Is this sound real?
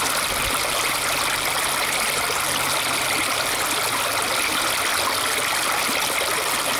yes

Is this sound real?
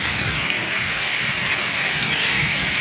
no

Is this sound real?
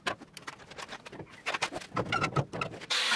yes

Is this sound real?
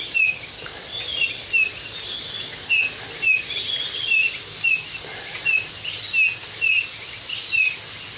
yes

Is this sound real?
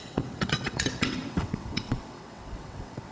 no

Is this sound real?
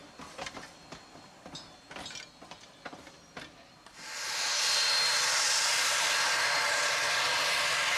yes